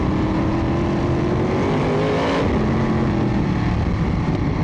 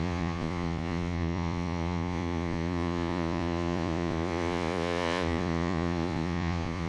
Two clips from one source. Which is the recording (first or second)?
first